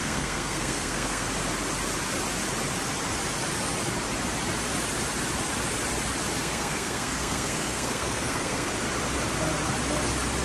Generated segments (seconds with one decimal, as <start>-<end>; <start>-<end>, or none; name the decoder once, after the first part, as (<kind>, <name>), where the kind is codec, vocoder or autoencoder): 0.0-1.3 (codec, SNAC); 6.4-8.7